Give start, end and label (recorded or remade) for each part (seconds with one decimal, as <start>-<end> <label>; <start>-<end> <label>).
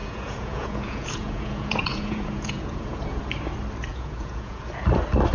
0.0-3.2 remade; 3.2-3.9 recorded; 3.9-4.6 remade; 4.6-5.3 recorded